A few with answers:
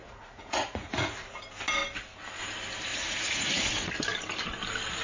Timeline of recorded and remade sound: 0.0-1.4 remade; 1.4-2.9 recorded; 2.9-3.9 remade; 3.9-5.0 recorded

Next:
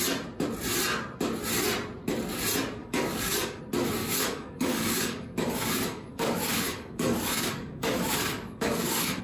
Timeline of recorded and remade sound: 0.0-2.8 recorded; 2.8-3.6 remade; 3.6-4.0 recorded; 4.0-9.2 remade